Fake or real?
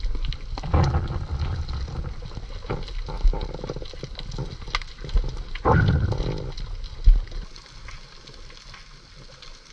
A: real